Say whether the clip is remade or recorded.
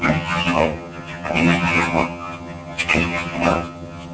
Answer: remade